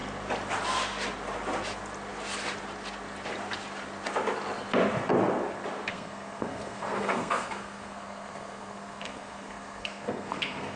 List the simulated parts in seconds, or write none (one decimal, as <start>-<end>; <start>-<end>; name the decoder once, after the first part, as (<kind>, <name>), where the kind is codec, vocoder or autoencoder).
5.9-10.8 (codec, SNAC)

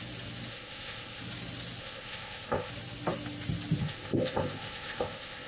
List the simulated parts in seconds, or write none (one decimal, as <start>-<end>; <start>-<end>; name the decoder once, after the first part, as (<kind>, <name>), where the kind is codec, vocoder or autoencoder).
0.5-1.2 (codec, ZipCodec); 1.8-2.7; 3.8-5.5

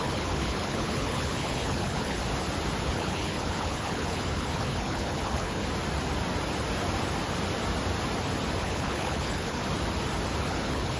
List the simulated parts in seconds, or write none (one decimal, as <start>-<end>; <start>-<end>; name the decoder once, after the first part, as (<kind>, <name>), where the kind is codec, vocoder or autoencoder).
0.0-2.2 (codec, HILCodec); 2.8-5.6; 8.6-9.6; 10.4-11.0

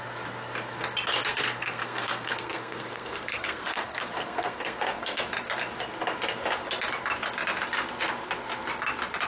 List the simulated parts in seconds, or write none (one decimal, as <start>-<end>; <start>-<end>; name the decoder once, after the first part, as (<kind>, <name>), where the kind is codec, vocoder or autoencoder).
1.3-5.2 (codec, SNAC)

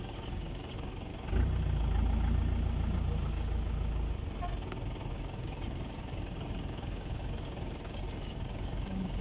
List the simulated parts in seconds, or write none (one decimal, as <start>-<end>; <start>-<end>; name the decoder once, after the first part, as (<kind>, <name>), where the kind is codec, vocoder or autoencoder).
0.0-1.1 (codec, DAC); 5.1-9.2

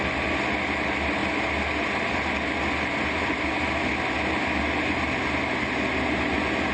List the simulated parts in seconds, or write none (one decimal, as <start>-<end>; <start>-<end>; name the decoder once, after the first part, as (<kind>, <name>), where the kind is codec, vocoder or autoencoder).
none

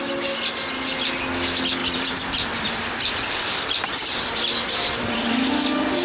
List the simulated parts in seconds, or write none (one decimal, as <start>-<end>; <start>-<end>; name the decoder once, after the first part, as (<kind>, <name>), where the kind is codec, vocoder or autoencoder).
1.8-5.3 (vocoder, BigVGAN v2)

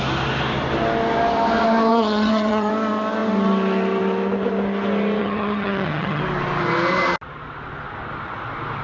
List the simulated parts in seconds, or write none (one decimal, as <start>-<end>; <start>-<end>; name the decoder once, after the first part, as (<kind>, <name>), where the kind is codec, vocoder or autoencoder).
1.9-2.7 (vocoder, HiFi-GAN); 5.2-6.2